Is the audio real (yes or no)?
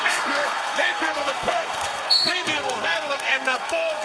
no